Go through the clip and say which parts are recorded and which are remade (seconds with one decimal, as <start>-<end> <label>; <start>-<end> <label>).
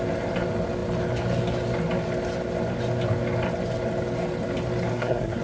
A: 0.0-4.9 recorded; 4.9-5.4 remade